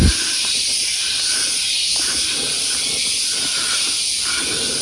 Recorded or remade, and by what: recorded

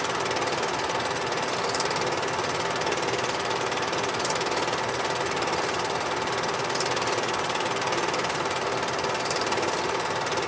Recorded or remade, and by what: recorded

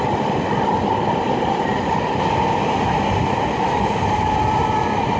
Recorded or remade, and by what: recorded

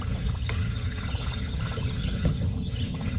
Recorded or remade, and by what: remade, vocoder, HiFi-GAN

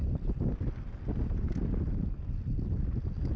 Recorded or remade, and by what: recorded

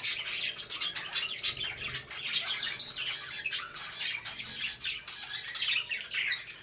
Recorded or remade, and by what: recorded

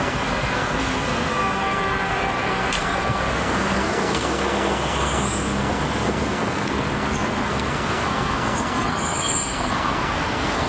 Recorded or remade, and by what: remade, codec, SNAC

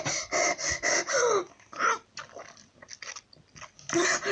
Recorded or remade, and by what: recorded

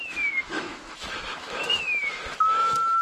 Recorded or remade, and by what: remade, autoencoder, DAC-VAE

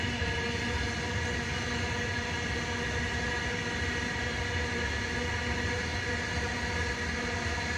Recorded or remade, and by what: recorded